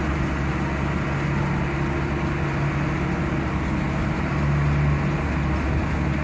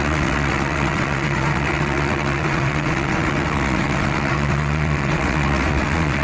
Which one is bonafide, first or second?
first